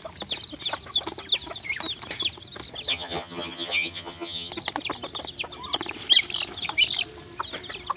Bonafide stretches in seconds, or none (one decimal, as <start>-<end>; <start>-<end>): 0.0-2.9; 4.5-8.0